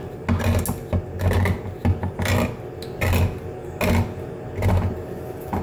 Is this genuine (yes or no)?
yes